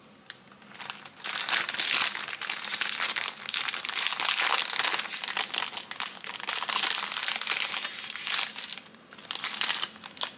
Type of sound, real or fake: real